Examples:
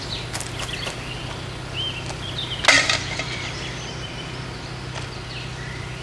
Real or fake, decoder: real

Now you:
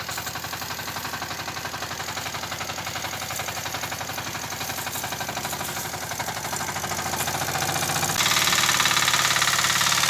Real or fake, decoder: real